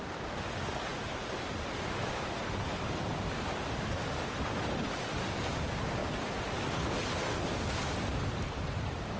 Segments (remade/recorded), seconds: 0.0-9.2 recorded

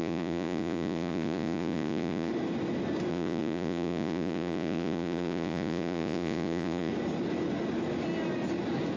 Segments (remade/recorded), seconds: 0.0-2.3 remade; 2.3-3.1 recorded; 3.1-6.9 remade; 6.9-9.0 recorded